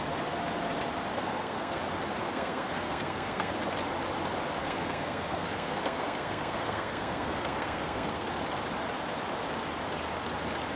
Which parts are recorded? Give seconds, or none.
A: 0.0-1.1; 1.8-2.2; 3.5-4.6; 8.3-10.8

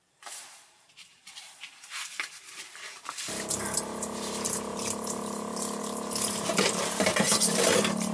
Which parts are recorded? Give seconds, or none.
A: none

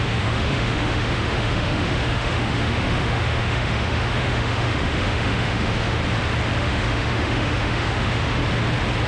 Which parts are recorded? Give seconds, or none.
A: 6.0-6.6; 8.4-9.1

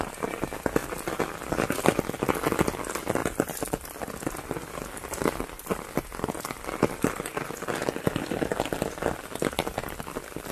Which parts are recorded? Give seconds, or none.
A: 0.0-3.2; 5.8-7.8

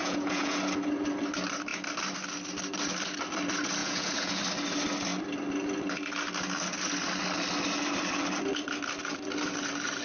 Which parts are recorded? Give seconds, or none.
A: 0.6-3.8; 4.4-10.0

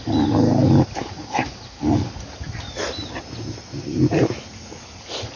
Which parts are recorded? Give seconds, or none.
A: 0.0-5.4

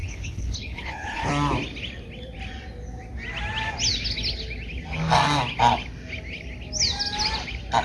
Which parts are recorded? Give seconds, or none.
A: 1.3-7.8